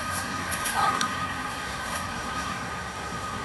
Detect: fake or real fake